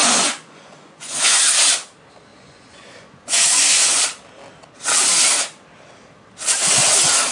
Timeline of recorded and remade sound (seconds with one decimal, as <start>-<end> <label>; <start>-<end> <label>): 0.0-1.5 remade; 1.5-2.3 recorded; 2.3-4.0 remade; 4.0-7.3 recorded